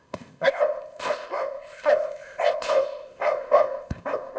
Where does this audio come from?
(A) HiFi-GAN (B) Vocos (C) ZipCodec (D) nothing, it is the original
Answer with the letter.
C